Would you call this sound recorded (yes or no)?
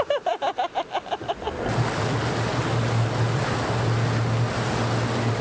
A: yes